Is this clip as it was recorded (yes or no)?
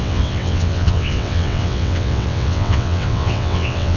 no